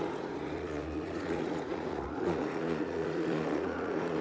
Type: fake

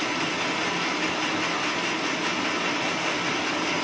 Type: real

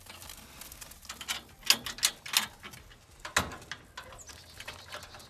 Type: real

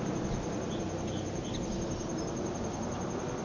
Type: real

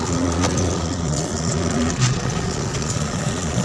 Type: fake